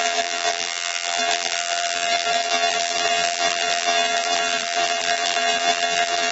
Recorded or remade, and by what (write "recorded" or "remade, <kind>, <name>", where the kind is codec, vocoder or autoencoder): remade, vocoder, BigVGAN v2